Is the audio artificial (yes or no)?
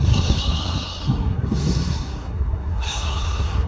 yes